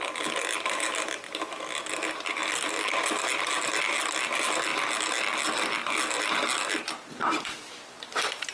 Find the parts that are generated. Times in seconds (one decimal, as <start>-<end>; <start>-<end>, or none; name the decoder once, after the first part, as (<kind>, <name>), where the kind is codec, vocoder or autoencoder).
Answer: none